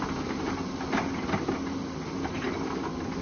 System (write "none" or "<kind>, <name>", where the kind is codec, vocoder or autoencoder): none